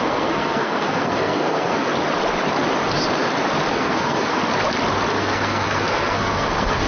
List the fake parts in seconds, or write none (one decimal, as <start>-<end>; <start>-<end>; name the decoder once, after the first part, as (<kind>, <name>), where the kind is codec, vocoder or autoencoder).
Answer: 0.0-1.9 (codec, SNAC); 3.7-4.4; 5.1-6.9